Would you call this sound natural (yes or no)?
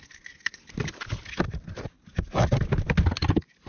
yes